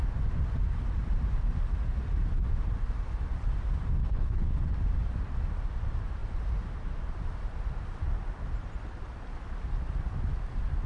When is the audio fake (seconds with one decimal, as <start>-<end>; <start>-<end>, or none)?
4.0-4.6